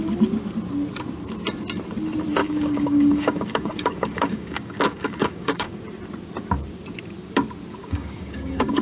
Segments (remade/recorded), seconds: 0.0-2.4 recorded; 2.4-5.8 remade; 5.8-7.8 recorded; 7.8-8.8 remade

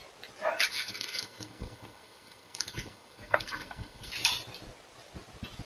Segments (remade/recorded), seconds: 0.0-0.7 recorded; 0.7-4.1 remade; 4.1-5.7 recorded

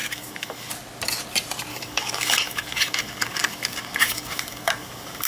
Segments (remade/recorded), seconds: 0.0-0.7 remade; 0.7-1.7 recorded; 1.7-5.3 remade